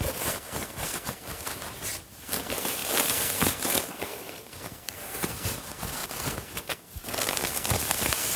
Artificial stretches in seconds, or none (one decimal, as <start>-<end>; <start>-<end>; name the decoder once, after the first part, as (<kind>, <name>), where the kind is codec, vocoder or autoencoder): 0.0-1.5 (codec, SNAC); 2.1-8.4